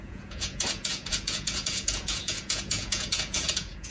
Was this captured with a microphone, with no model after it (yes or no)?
no